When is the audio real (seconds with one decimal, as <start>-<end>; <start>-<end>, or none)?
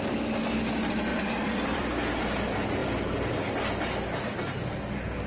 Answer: 0.0-1.1; 2.2-5.3